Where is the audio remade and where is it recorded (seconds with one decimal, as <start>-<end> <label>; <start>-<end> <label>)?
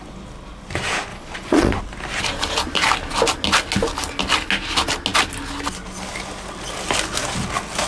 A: 0.0-1.1 recorded; 1.1-1.8 remade; 1.8-7.9 recorded